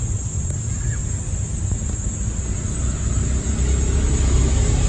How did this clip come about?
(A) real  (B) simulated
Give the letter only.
A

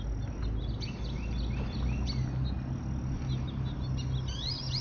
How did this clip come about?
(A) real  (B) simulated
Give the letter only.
A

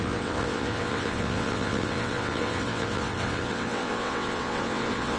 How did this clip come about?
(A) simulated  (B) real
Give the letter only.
A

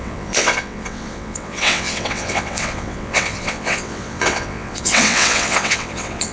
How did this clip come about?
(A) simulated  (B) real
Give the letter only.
A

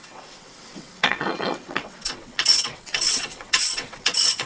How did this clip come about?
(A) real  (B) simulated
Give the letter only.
B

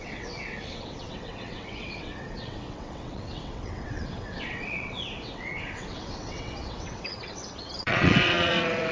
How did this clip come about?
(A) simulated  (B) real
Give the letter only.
A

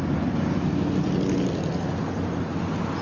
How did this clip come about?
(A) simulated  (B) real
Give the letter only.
B